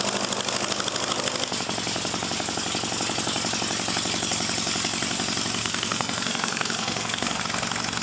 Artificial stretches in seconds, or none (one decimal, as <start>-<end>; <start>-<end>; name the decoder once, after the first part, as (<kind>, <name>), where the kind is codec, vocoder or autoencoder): 5.6-7.4 (codec, SNAC)